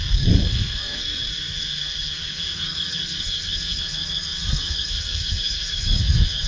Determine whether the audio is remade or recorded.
remade